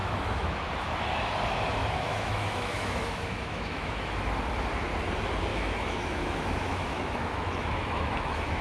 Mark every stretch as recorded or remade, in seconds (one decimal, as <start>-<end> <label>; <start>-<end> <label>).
0.0-0.7 remade; 0.7-1.8 recorded; 1.8-4.3 remade; 4.3-5.5 recorded; 5.5-8.6 remade